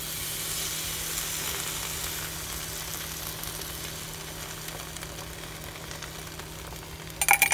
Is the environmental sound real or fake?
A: real